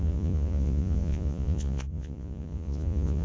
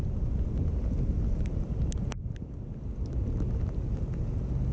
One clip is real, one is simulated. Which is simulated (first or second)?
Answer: first